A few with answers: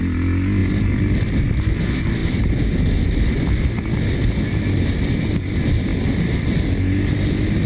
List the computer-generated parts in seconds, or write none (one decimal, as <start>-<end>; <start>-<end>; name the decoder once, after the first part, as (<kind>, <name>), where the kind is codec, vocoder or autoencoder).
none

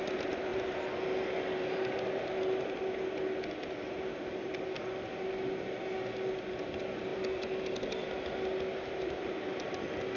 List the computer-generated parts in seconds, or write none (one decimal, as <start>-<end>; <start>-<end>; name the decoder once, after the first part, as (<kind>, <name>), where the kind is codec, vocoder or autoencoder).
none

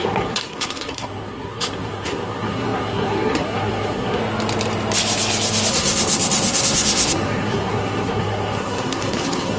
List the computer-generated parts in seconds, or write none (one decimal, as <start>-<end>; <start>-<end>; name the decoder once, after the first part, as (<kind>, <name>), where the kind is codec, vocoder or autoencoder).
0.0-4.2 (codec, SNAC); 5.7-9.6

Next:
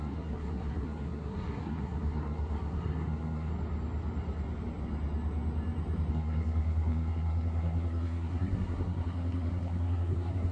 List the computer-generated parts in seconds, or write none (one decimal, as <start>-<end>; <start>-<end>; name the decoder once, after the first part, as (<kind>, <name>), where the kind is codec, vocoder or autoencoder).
0.0-3.5 (codec, SNAC); 6.1-10.5

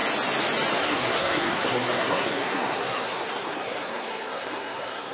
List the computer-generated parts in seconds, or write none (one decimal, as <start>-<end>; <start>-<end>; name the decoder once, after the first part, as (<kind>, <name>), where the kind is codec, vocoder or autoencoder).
0.8-5.1 (codec, SNAC)

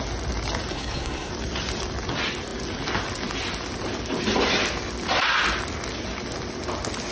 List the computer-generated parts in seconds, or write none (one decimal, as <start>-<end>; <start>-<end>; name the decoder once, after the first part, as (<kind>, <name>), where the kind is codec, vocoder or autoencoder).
0.7-1.3 (codec, SNAC)

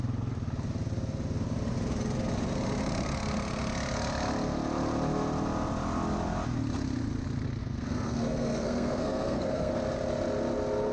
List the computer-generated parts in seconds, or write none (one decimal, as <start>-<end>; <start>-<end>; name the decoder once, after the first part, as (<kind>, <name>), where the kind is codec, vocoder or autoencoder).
7.6-9.7 (codec, SNAC)